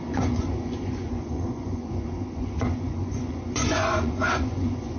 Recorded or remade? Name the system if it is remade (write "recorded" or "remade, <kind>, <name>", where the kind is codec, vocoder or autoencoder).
remade, vocoder, Vocos